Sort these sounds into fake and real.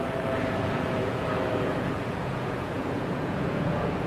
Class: fake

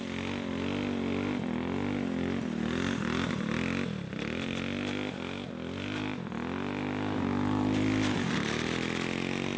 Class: real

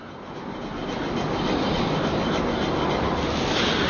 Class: real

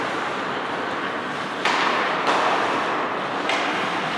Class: real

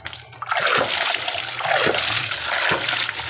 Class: real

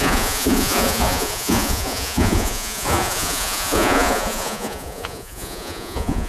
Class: fake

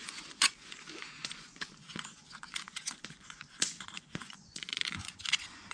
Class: fake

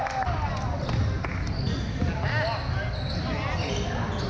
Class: real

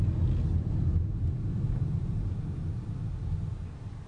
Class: real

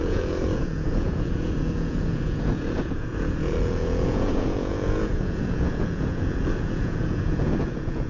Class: fake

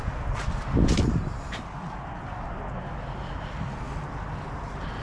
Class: real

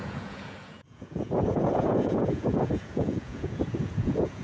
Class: fake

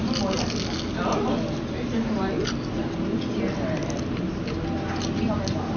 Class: real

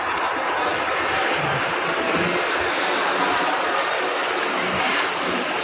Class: real